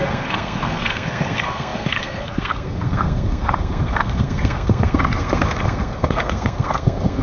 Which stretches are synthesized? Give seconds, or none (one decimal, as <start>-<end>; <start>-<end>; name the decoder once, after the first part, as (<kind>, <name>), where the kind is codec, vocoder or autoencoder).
0.0-7.2 (codec, SNAC)